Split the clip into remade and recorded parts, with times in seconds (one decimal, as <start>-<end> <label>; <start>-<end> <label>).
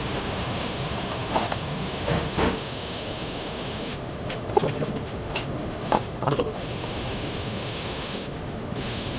0.0-9.2 remade